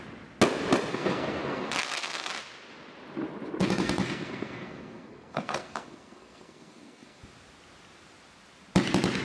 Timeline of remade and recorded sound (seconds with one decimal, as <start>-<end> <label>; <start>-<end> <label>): 0.0-0.9 recorded; 0.9-2.3 remade; 2.3-3.6 recorded; 3.6-7.2 remade; 7.2-9.2 recorded